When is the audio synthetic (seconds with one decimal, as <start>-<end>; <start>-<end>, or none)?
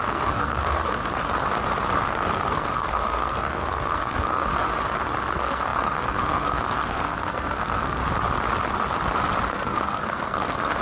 0.0-1.0; 2.0-4.6; 5.3-8.0; 9.5-10.8